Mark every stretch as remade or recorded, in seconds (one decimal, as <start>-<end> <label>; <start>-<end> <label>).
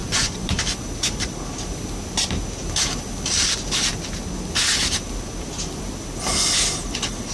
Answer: 0.0-0.6 remade; 0.6-7.3 recorded